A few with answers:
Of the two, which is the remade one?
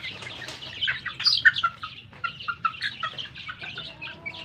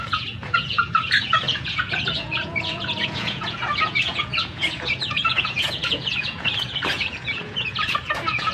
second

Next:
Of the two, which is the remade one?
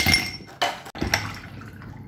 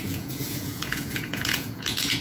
second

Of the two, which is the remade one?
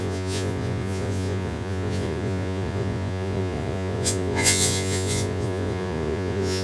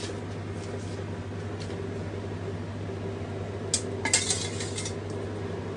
first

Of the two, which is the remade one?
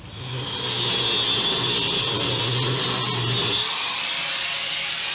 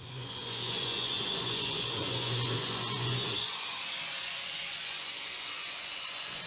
second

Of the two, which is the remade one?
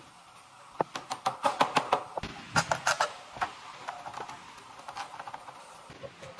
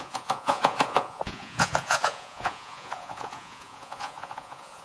second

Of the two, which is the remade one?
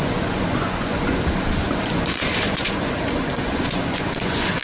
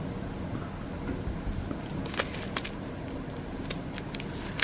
first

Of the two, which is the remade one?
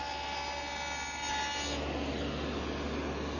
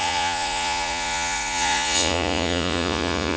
second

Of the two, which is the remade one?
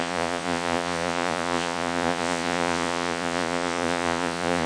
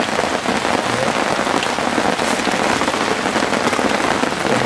first